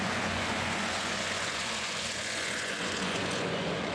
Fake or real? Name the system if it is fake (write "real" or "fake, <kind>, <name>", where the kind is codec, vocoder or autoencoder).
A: fake, vocoder, Vocos